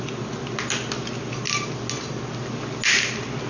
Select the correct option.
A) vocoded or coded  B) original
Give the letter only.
B